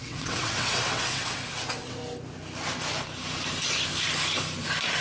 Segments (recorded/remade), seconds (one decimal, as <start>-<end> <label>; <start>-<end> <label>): 0.0-2.0 remade; 2.0-5.0 recorded